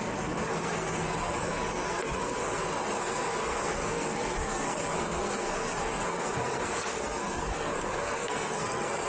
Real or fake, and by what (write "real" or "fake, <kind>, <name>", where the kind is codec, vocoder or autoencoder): fake, codec, SNAC